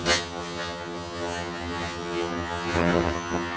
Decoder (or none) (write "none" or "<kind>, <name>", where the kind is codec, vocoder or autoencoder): vocoder, HiFi-GAN